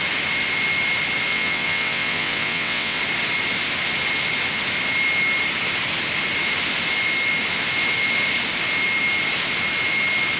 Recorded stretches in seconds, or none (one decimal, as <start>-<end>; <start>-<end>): 0.0-1.3; 3.0-10.4